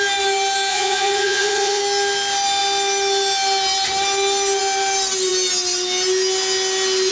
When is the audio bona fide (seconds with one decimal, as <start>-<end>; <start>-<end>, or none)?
0.0-0.7; 1.8-7.1